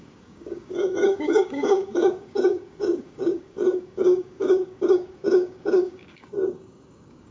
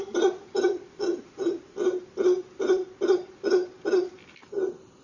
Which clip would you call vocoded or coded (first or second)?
first